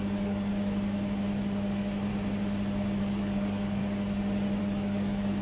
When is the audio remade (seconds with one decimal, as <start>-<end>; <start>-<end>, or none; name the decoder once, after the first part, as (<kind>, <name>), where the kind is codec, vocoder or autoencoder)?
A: 0.0-0.5 (codec, DAC); 1.7-2.1; 3.0-3.8; 4.6-5.4